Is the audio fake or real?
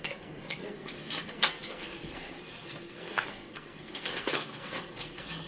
fake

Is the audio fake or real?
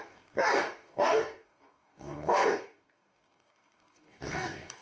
fake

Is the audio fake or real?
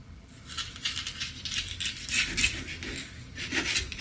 real